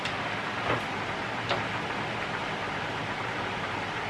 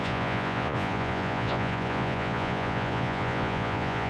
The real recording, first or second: first